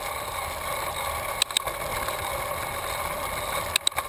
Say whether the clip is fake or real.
real